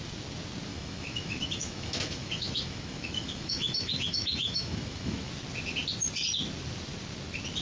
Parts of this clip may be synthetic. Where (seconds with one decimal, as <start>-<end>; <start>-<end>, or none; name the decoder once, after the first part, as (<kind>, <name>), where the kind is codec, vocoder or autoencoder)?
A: 0.7-5.3 (autoencoder, DAC-VAE)